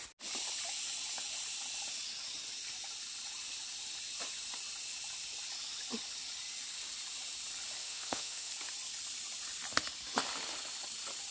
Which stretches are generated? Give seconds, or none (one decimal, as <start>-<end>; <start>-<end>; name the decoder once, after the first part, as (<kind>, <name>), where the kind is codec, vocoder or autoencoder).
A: 7.8-8.5 (autoencoder, DAC-VAE)